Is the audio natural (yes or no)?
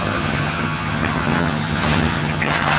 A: no